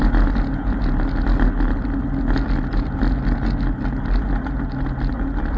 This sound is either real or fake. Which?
real